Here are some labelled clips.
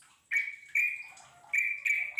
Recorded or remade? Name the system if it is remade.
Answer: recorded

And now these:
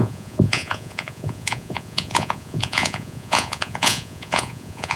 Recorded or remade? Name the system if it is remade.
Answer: remade, vocoder, Vocos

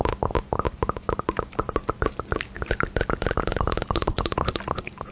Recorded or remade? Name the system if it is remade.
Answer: recorded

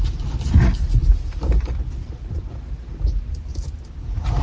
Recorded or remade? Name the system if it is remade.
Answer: recorded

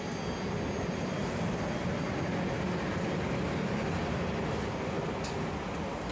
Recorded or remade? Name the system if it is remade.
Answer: recorded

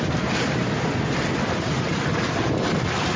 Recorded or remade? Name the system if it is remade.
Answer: recorded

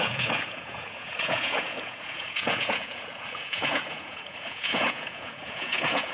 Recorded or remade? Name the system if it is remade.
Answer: remade, vocoder, Vocos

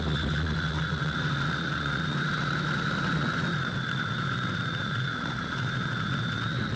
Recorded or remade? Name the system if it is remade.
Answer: remade, vocoder, Vocos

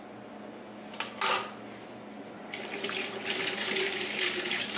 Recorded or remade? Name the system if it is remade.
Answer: recorded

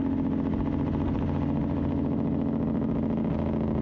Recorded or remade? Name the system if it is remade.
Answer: recorded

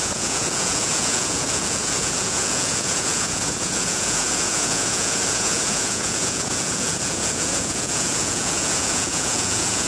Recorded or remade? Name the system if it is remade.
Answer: remade, vocoder, Vocos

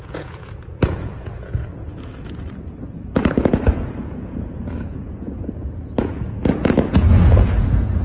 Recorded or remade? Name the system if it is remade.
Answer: remade, vocoder, Vocos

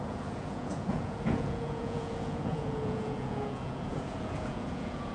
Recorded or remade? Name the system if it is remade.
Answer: remade, vocoder, Vocos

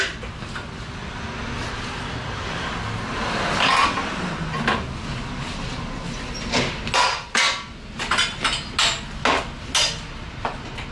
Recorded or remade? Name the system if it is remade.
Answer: recorded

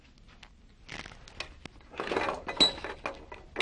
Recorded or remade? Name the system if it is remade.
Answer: recorded